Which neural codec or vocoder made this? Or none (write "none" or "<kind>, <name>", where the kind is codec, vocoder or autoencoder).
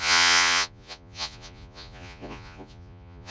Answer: vocoder, Vocos